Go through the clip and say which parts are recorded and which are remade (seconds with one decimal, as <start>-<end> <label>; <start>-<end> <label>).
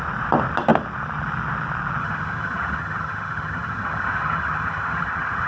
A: 0.0-2.0 recorded; 2.0-5.5 remade